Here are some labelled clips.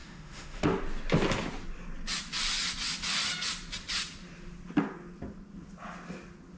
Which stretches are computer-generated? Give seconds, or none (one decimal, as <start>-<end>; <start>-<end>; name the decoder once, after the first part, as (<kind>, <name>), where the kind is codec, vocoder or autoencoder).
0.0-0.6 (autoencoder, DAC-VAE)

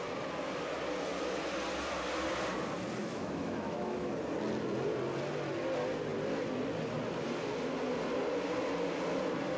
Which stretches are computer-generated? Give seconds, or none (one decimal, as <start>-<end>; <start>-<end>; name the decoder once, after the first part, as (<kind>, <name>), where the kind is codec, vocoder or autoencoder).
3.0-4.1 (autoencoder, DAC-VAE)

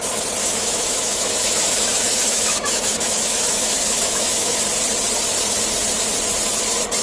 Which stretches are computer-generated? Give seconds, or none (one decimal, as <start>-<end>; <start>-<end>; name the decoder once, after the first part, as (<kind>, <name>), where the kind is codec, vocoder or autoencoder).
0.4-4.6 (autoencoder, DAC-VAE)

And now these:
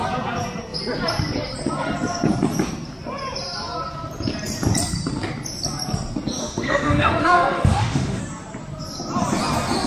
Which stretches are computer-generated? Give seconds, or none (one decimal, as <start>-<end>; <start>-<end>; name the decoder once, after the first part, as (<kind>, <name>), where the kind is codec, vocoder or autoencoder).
6.4-8.2 (autoencoder, DAC-VAE)

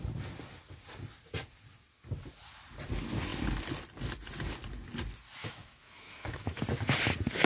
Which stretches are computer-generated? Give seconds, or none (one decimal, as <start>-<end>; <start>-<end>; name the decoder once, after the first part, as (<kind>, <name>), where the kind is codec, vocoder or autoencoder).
5.4-6.6 (autoencoder, DAC-VAE)

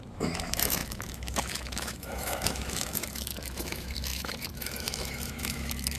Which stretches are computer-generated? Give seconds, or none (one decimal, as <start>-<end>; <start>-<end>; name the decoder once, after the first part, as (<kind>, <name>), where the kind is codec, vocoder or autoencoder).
0.0-6.0 (autoencoder, DAC-VAE)

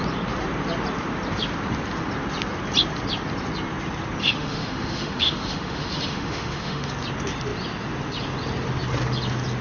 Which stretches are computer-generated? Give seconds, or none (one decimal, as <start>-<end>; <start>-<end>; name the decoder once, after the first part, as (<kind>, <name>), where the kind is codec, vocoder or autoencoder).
4.2-6.9 (autoencoder, DAC-VAE)

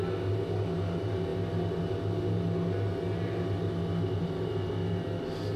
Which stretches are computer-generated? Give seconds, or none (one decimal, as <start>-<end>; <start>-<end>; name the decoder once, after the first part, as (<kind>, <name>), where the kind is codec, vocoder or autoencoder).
none